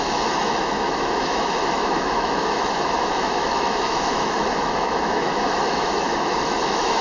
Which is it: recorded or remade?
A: remade